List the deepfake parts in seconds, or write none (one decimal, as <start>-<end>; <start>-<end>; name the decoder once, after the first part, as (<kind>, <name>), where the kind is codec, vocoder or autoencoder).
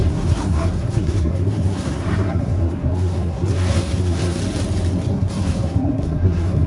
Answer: 0.0-4.4 (codec, SNAC); 5.1-6.7